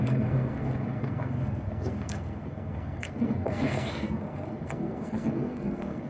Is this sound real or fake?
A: fake